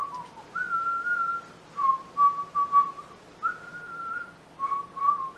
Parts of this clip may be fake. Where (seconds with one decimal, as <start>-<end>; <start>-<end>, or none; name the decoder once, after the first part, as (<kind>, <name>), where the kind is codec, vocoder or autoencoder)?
none